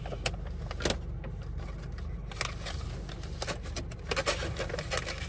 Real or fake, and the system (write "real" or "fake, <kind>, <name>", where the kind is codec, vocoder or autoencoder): real